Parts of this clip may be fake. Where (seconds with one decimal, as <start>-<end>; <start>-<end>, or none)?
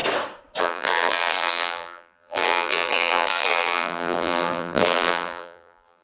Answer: 0.6-6.0